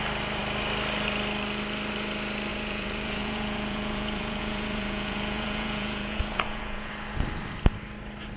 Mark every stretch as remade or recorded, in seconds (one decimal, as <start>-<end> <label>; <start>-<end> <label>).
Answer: 0.0-2.5 recorded; 2.5-6.9 remade; 6.9-8.4 recorded